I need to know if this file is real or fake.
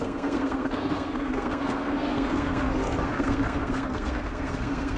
fake